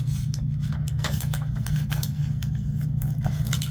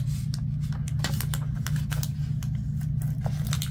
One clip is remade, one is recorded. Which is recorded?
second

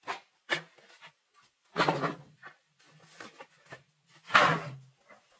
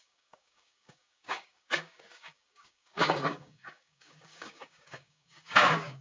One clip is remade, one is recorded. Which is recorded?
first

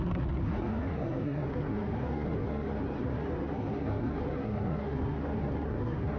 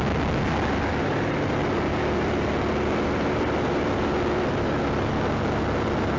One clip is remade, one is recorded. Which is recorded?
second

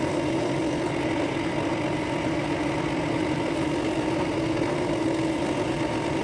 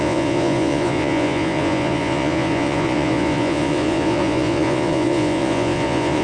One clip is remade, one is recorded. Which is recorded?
first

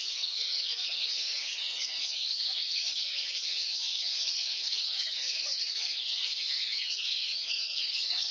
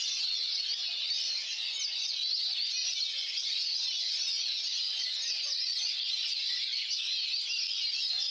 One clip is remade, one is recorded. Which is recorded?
second